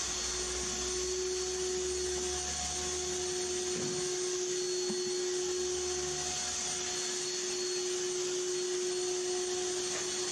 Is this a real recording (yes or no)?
yes